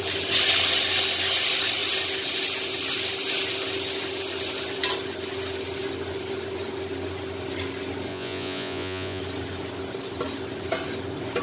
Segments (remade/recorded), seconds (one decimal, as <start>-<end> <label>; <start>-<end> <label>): 0.0-8.1 recorded; 8.1-9.2 remade; 9.2-11.4 recorded

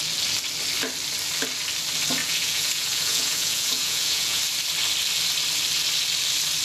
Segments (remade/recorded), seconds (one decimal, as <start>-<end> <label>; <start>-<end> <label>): 0.0-2.2 recorded; 2.2-4.4 remade; 4.4-6.6 recorded

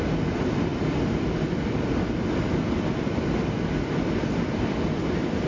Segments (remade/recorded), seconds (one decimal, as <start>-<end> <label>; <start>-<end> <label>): 0.0-5.5 recorded

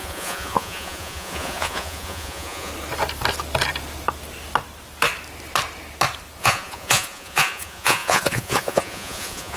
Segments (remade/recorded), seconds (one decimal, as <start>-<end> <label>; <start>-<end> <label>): 0.0-2.7 remade; 2.7-6.4 recorded; 6.4-9.6 remade